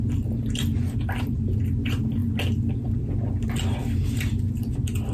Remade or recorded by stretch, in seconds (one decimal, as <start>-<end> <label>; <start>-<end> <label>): 0.0-5.1 recorded